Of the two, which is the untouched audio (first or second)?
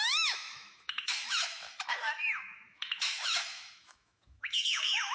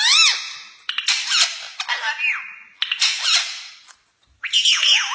second